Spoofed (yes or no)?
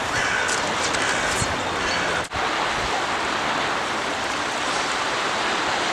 no